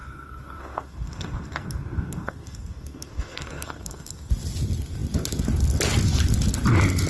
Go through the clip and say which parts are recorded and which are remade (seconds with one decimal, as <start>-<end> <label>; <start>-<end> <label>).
0.0-4.3 remade; 4.3-7.1 recorded